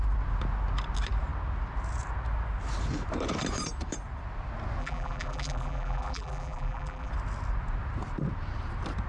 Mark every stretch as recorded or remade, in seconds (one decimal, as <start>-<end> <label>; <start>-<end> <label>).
0.0-4.8 recorded; 4.8-7.1 remade; 7.1-9.1 recorded